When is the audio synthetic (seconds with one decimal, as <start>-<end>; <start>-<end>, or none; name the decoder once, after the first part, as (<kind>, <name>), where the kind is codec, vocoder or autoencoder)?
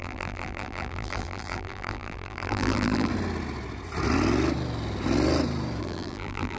0.0-3.1 (vocoder, BigVGAN v2); 5.8-6.6